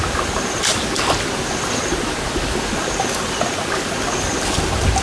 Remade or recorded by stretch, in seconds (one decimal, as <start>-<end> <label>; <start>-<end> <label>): 0.0-5.0 recorded